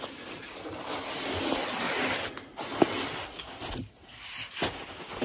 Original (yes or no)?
yes